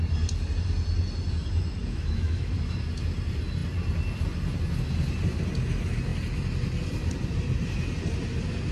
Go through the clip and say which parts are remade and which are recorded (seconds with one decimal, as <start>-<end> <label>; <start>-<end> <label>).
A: 0.0-1.8 recorded; 1.8-2.5 remade; 2.5-8.7 recorded